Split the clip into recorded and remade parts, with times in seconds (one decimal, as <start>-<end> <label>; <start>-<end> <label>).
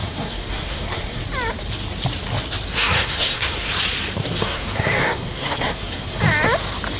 0.0-1.2 remade; 1.2-2.7 recorded; 2.7-3.7 remade; 3.7-4.2 recorded; 4.2-6.2 remade; 6.2-7.0 recorded